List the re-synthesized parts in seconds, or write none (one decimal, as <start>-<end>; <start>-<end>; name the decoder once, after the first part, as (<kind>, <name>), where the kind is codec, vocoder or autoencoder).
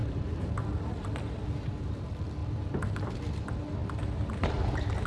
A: 0.0-1.3 (vocoder, BigVGAN v2); 2.4-3.1